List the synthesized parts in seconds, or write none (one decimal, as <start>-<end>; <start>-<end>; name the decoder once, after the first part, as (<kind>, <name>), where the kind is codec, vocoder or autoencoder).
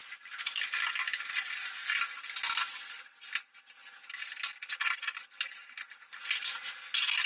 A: none